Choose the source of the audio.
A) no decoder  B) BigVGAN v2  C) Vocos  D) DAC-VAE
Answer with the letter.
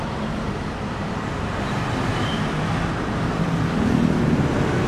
B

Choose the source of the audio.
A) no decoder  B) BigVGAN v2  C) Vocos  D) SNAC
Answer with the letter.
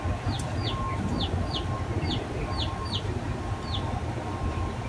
A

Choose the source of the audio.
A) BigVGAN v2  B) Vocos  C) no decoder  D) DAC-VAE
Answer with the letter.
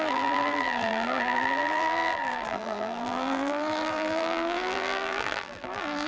A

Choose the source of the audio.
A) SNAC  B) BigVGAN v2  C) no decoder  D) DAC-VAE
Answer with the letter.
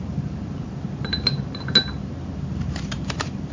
B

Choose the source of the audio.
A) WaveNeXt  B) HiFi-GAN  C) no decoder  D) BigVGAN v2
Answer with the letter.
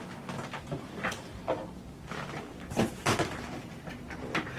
C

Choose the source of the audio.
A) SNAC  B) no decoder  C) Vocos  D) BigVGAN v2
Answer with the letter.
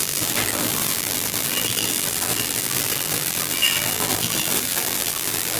D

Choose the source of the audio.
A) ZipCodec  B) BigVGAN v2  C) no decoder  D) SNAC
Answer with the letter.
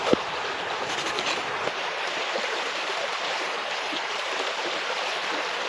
B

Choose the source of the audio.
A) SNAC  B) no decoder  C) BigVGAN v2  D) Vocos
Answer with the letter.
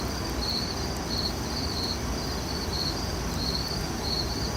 B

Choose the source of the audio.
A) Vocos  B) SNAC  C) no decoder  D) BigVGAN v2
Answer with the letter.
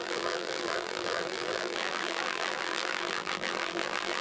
D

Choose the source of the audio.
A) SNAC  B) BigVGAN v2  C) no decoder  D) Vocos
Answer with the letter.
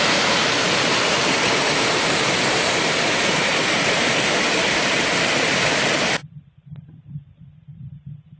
B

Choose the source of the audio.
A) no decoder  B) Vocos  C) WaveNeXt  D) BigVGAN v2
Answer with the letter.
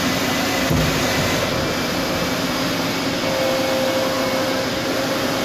A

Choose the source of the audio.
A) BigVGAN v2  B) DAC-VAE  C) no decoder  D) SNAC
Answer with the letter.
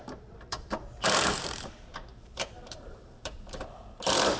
A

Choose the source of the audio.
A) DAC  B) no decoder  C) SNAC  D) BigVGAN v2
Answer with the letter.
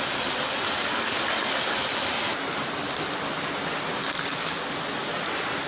B